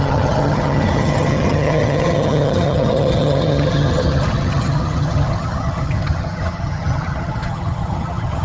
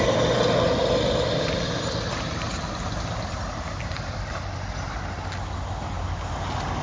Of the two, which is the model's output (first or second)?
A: first